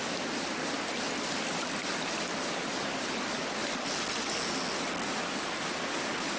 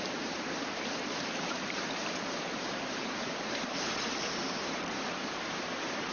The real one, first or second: first